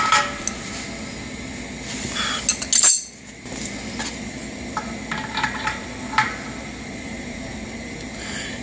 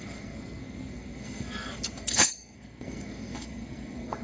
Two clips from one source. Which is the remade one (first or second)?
second